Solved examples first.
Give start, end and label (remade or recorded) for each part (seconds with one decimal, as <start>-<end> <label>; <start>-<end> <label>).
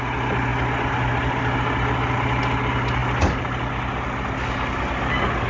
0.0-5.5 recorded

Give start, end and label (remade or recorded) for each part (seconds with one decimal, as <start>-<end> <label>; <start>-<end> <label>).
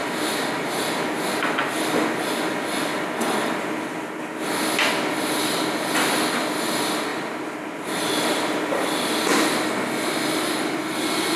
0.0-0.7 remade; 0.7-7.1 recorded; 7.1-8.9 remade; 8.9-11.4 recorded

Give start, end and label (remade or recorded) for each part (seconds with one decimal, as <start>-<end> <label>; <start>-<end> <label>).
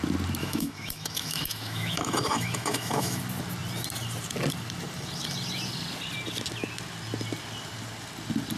0.0-0.4 recorded; 0.4-3.2 remade; 3.2-8.6 recorded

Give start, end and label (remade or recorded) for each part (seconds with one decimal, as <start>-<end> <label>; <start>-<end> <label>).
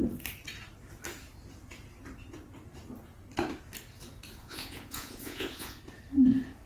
0.0-4.4 recorded; 4.4-5.8 remade; 5.8-6.7 recorded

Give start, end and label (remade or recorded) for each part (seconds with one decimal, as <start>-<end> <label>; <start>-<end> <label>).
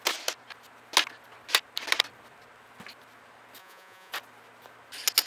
0.0-3.6 recorded; 3.6-4.1 remade; 4.1-5.3 recorded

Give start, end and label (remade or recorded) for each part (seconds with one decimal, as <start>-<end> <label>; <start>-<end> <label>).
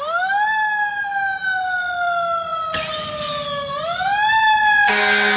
0.0-5.4 recorded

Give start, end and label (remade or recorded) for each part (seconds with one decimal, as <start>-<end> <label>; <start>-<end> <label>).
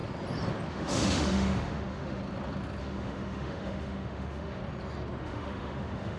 0.0-0.7 recorded; 0.7-2.2 remade; 2.2-2.8 recorded; 2.8-4.6 remade; 4.6-5.2 recorded; 5.2-6.2 remade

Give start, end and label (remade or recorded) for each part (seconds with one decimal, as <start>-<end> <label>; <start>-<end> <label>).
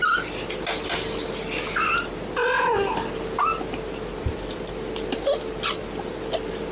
0.0-6.7 recorded